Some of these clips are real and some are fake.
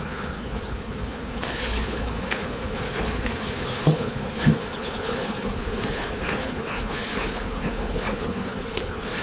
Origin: fake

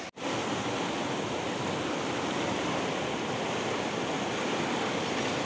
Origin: real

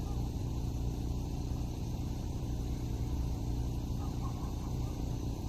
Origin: fake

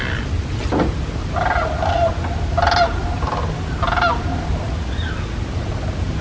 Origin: real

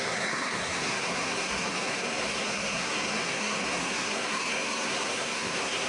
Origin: fake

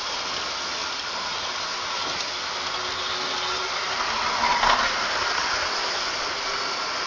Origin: real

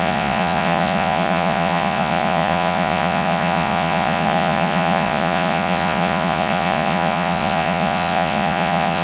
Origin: fake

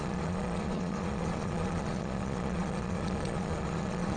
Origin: fake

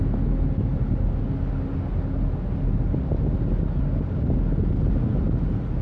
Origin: real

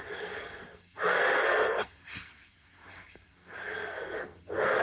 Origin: fake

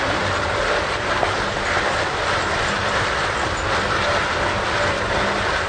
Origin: real